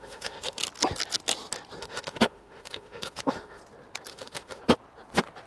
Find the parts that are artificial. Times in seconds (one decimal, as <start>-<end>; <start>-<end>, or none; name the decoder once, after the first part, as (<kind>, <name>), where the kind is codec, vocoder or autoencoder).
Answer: 0.0-0.6 (autoencoder, DAC-VAE); 1.8-3.6; 4.1-4.6